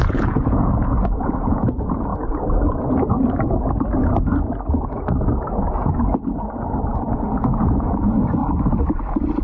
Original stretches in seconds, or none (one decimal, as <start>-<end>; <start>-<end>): 2.1-7.2; 8.4-9.4